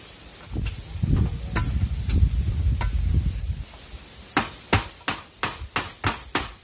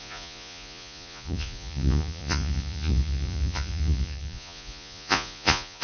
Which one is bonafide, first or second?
first